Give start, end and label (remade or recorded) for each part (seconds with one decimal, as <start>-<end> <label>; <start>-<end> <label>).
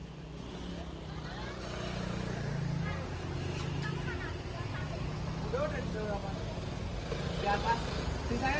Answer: 0.0-0.7 remade; 0.7-8.6 recorded